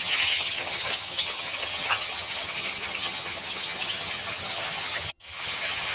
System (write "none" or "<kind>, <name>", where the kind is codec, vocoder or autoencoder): vocoder, HiFi-GAN